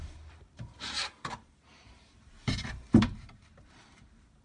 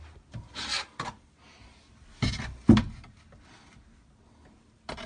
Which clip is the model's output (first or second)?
first